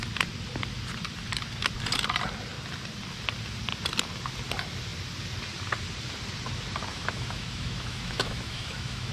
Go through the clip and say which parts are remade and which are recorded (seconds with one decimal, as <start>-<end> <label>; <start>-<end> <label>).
0.0-6.9 recorded; 6.9-9.1 remade